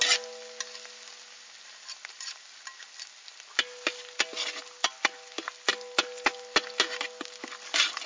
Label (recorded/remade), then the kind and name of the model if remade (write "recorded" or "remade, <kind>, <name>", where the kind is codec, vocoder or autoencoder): recorded